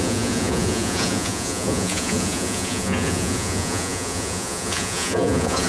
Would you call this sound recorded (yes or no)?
no